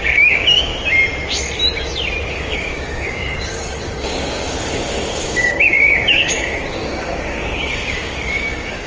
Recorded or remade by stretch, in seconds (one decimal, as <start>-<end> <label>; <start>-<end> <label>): 0.0-0.7 remade; 0.7-2.3 recorded; 2.3-8.9 remade